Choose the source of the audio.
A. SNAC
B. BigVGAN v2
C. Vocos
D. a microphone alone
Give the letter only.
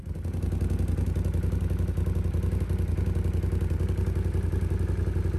D